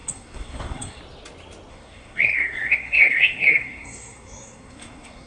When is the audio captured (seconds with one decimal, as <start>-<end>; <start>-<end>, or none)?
1.0-1.7